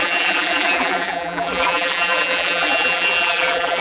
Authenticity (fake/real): fake